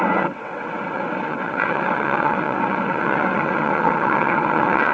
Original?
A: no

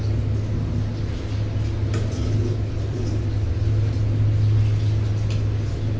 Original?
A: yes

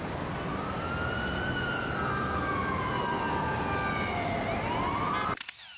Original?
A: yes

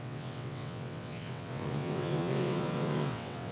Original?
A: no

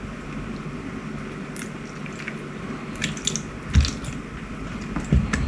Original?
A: yes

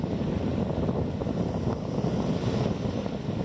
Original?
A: yes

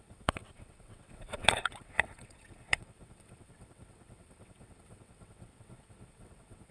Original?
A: no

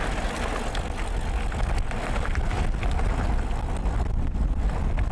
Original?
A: yes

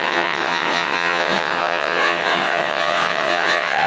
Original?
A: no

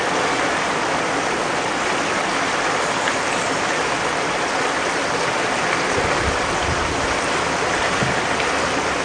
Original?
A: yes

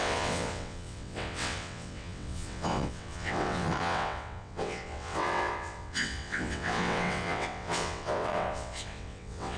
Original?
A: no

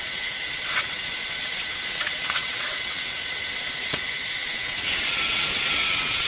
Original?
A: no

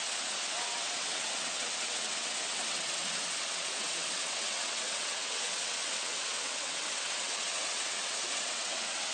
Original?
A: no